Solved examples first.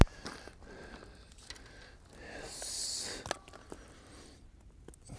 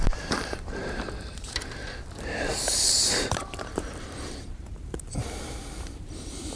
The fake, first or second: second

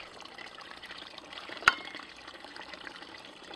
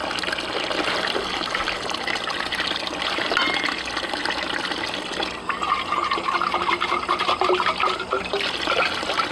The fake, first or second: first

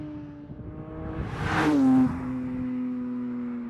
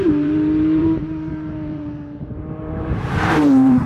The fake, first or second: second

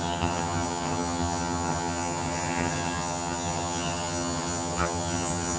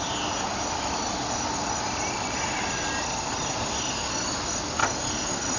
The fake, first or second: first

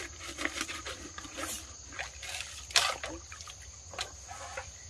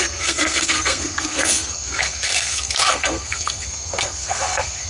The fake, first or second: second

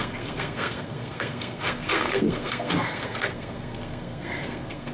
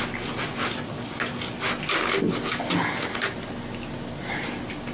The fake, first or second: first